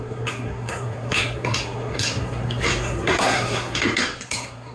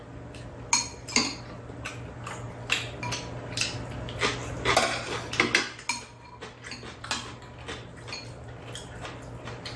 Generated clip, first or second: first